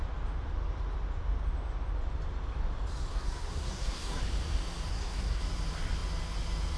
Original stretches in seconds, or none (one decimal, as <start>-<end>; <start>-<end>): 0.0-3.1; 4.2-4.9; 5.4-6.8

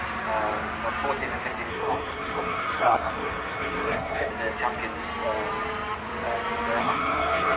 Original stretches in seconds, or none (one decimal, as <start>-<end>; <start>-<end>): 0.0-1.7; 4.3-6.8

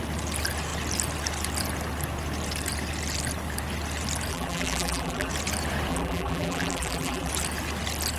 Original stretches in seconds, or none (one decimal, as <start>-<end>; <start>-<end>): 0.0-4.3; 5.3-5.9; 7.3-8.2

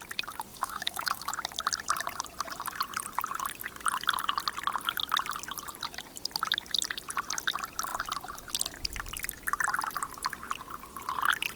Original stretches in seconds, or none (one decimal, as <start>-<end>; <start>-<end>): 0.0-0.5; 1.3-11.6

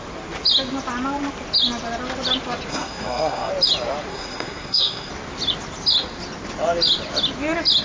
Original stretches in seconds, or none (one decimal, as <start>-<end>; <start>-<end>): 0.0-2.7; 3.5-4.1; 5.1-7.8

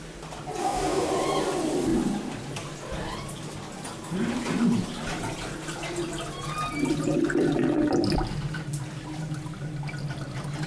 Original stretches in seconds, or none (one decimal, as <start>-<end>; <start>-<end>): 0.0-0.6; 1.1-10.7

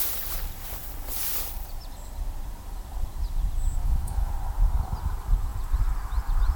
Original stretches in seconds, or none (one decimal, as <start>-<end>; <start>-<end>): 0.0-3.8; 4.3-6.6

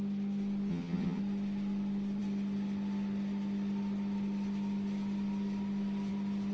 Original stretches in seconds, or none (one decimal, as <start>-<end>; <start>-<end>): 0.0-0.7; 1.2-6.5